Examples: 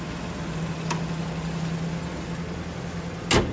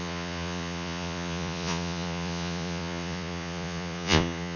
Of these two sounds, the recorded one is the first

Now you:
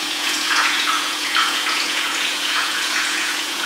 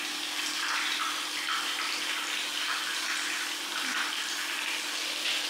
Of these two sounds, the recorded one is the second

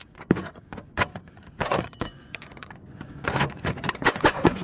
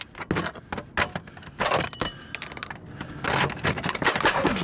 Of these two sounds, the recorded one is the second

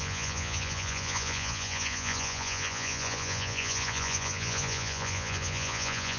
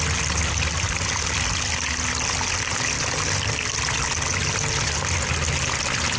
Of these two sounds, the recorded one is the second